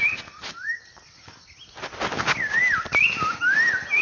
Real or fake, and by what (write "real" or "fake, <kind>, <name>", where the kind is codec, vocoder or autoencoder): real